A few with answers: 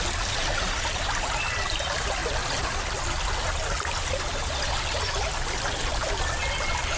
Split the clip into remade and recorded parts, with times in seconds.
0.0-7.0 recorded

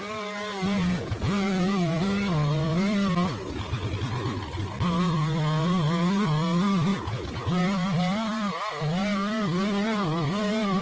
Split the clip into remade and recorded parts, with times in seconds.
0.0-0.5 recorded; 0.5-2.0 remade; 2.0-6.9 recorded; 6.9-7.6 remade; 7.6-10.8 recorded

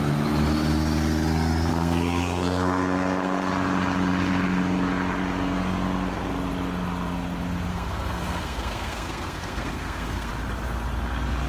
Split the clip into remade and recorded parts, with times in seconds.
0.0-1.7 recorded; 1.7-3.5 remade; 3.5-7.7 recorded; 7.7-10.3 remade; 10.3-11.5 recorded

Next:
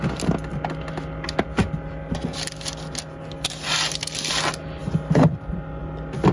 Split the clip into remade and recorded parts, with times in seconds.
0.0-6.3 recorded

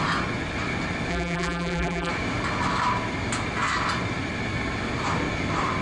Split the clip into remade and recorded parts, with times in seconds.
0.0-1.1 recorded; 1.1-2.1 remade; 2.1-5.8 recorded

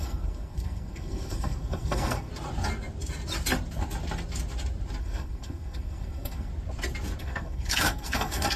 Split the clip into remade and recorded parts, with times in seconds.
0.0-2.3 remade; 2.3-5.0 recorded; 5.0-6.5 remade; 6.5-7.2 recorded; 7.2-8.6 remade